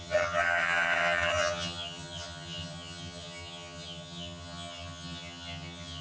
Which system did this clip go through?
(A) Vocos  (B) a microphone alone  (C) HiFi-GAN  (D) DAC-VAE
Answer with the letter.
C